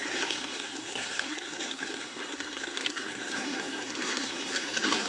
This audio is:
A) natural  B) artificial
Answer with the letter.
B